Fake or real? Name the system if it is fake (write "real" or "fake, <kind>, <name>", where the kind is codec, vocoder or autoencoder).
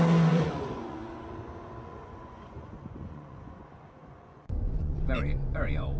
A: fake, vocoder, Vocos